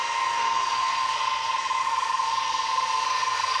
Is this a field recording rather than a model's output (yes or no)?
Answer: no